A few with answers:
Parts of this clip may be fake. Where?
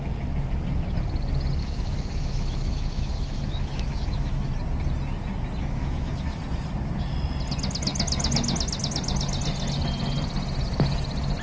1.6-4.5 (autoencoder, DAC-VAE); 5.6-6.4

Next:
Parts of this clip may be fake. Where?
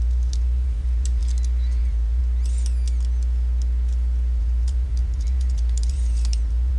0.0-1.2 (vocoder, BigVGAN v2); 1.8-2.2; 4.4-6.8